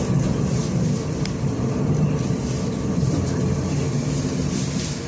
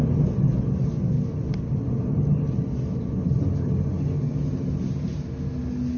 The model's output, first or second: first